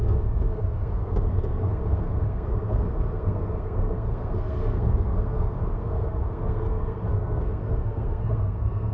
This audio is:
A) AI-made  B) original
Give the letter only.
A